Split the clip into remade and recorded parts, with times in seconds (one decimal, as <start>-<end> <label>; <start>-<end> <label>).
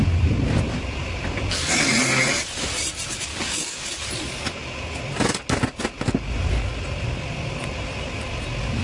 0.0-3.3 recorded; 3.3-3.9 remade; 3.9-8.8 recorded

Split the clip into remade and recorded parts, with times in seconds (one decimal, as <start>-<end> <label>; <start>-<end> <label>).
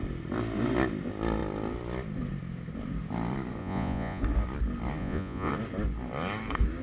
0.0-3.6 recorded; 3.6-4.2 remade; 4.2-5.0 recorded; 5.0-5.5 remade; 5.5-6.8 recorded